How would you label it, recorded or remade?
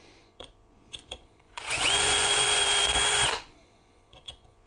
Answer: remade